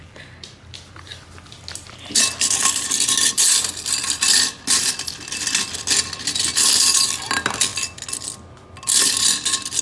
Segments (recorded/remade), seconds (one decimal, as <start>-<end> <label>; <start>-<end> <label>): 0.0-9.8 recorded